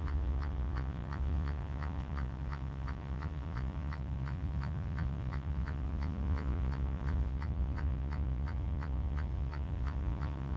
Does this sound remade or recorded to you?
remade